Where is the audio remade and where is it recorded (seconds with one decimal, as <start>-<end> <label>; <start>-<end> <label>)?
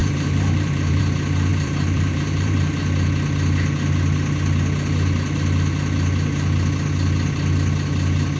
0.0-1.0 remade; 1.0-1.5 recorded; 1.5-2.8 remade; 2.8-8.4 recorded